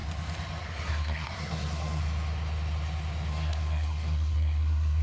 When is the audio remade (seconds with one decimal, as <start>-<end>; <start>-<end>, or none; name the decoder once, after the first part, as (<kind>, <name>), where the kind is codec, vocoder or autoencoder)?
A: 0.6-2.0 (codec, SNAC); 3.3-5.0